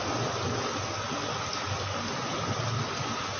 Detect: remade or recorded recorded